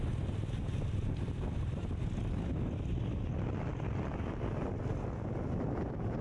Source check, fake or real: real